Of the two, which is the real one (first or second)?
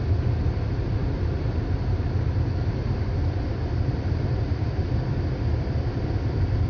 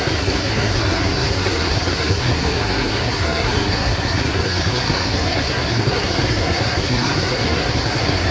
first